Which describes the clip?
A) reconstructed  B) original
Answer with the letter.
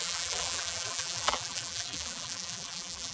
A